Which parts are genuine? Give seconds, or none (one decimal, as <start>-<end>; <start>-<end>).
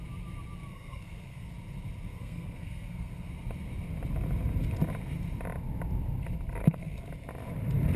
0.0-0.7; 1.5-2.1; 3.3-6.6; 7.1-8.0